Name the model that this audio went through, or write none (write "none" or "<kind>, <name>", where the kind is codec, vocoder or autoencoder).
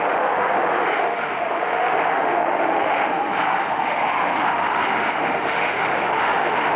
autoencoder, DAC-VAE